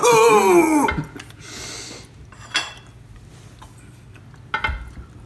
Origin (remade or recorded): recorded